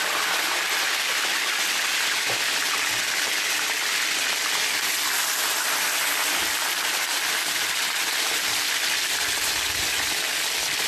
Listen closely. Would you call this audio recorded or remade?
recorded